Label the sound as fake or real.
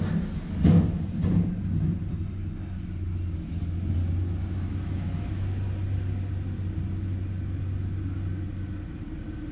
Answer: real